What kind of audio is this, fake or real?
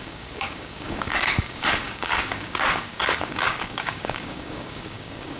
fake